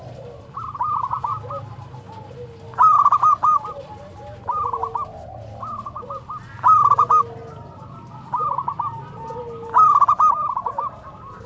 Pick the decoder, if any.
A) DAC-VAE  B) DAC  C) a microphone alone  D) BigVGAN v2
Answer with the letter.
C